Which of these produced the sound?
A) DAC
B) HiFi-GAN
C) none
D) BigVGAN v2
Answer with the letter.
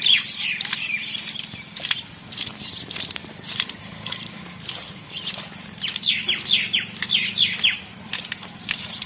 D